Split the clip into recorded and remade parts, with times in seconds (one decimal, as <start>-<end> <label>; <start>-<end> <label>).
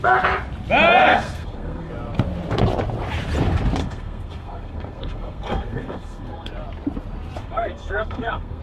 0.0-1.0 recorded; 1.0-1.9 remade; 1.9-3.8 recorded; 3.8-6.5 remade; 6.5-7.4 recorded; 7.4-8.6 remade